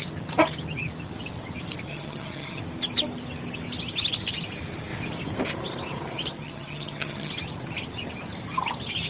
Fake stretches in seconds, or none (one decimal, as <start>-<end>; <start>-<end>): 1.9-2.6; 6.4-7.3